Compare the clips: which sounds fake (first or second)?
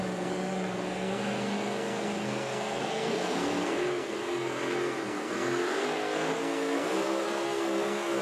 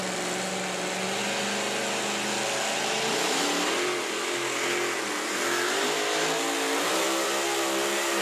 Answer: first